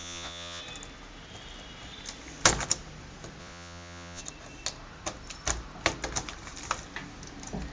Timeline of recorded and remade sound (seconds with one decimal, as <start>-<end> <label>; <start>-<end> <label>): 0.0-0.6 remade; 0.6-3.4 recorded; 3.4-4.2 remade; 4.2-7.7 recorded